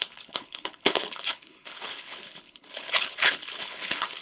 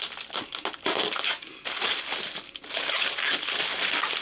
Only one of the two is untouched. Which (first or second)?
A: second